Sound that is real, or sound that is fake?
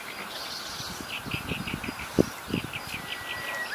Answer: real